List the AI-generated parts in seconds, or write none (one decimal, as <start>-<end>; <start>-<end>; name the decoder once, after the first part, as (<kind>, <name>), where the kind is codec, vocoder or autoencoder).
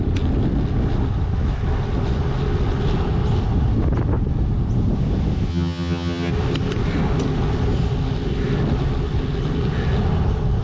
5.5-6.3 (vocoder, HiFi-GAN)